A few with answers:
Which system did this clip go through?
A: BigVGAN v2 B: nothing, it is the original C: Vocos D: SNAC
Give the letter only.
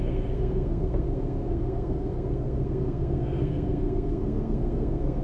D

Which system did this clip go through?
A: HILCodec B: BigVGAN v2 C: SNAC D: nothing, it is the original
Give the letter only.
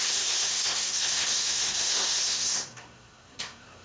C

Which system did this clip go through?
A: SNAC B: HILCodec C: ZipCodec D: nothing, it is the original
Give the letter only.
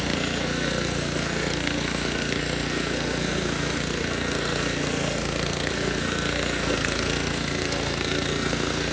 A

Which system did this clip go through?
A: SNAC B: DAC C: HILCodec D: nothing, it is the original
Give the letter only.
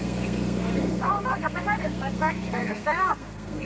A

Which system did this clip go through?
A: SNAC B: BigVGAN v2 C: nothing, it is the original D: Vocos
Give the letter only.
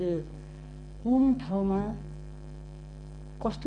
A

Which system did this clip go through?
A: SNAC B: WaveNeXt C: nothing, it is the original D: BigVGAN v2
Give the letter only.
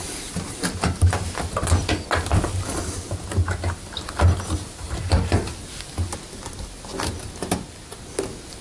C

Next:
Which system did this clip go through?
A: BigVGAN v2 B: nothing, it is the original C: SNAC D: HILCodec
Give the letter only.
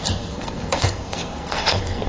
C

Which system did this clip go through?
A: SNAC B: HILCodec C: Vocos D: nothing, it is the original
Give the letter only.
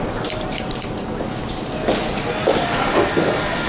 D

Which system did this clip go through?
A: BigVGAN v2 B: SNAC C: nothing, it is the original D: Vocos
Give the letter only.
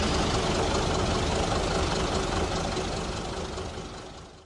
C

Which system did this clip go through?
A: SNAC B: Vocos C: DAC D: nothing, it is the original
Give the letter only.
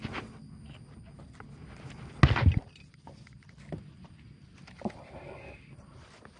D